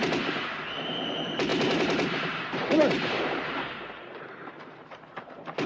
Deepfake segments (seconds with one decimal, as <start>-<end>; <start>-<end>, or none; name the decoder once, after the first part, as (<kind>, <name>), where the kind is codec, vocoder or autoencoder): 0.0-5.7 (vocoder, BigVGAN v2)